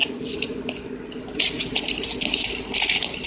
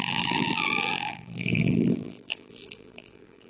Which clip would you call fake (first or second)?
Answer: second